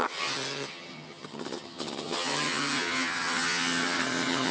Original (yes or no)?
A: no